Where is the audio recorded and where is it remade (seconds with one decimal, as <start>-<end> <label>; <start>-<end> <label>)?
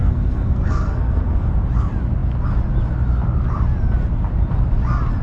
0.0-1.5 remade; 1.5-5.2 recorded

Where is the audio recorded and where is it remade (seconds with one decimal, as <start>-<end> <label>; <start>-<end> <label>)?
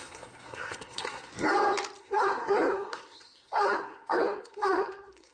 0.0-1.3 remade; 1.3-2.0 recorded; 2.0-5.3 remade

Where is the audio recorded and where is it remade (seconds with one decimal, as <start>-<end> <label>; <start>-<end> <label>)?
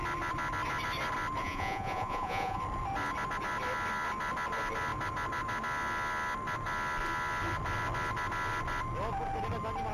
0.0-1.4 recorded; 1.4-2.6 remade; 2.6-9.9 recorded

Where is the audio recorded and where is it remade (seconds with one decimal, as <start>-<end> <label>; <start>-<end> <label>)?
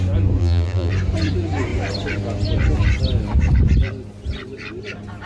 0.0-0.4 recorded; 0.4-0.9 remade; 0.9-5.3 recorded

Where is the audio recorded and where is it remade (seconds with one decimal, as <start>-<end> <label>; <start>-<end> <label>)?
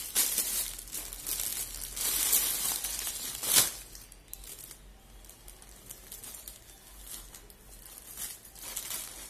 0.0-9.3 recorded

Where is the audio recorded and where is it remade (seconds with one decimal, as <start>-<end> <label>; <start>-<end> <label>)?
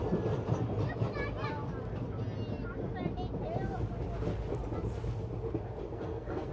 0.0-5.9 recorded; 5.9-6.5 remade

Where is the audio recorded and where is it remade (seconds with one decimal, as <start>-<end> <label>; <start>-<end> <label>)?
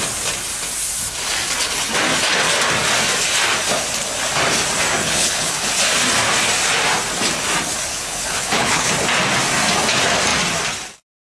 0.0-5.0 recorded; 5.0-5.7 remade; 5.7-7.9 recorded; 7.9-8.9 remade; 8.9-11.3 recorded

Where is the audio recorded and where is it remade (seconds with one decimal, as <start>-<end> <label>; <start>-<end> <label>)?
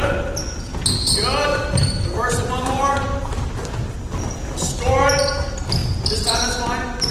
0.0-1.5 recorded; 1.5-3.5 remade; 3.5-7.1 recorded